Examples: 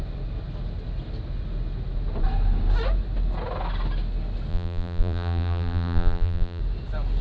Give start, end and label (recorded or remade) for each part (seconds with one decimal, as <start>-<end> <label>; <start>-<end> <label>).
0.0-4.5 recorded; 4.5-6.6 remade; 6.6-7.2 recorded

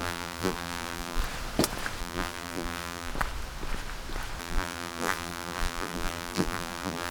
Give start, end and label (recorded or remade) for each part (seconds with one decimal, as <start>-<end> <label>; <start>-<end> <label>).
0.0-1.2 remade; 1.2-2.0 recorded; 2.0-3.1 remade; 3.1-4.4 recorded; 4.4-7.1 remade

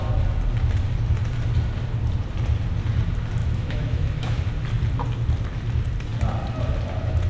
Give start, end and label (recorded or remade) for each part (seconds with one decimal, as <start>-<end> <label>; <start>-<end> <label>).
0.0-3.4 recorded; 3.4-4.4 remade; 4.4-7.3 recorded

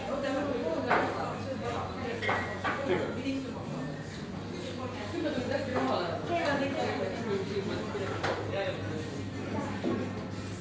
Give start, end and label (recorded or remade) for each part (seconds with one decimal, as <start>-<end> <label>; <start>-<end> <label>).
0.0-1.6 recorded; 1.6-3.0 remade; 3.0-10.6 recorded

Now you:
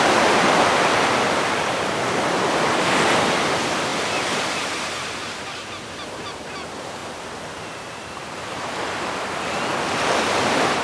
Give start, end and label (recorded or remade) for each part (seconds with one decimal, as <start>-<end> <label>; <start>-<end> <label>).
0.0-7.0 remade; 7.0-10.8 recorded

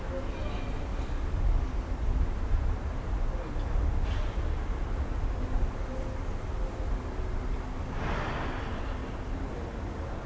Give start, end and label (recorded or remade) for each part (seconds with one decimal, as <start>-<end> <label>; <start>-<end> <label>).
0.0-0.9 recorded; 0.9-1.4 remade; 1.4-9.0 recorded; 9.0-9.5 remade; 9.5-10.3 recorded

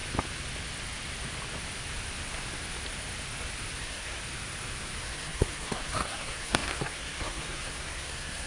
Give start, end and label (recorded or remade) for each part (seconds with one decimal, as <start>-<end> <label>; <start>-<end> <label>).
0.0-3.8 recorded; 3.8-4.2 remade; 4.2-5.0 recorded; 5.0-8.5 remade

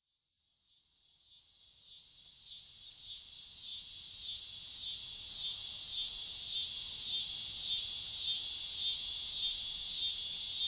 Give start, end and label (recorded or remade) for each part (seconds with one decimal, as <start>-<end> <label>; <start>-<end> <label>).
0.0-10.7 recorded